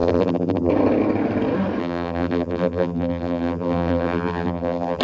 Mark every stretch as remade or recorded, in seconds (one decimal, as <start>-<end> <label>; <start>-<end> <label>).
0.0-0.7 remade; 0.7-1.8 recorded; 1.8-5.0 remade